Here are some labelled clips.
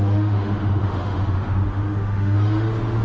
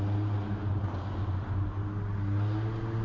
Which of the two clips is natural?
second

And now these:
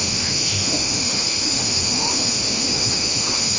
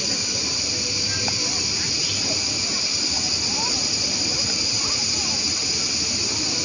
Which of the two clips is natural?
second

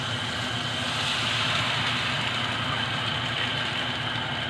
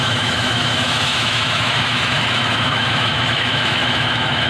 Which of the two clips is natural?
first